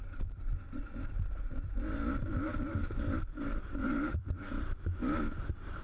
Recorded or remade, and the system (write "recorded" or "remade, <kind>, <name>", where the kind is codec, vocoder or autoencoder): remade, vocoder, BigVGAN v2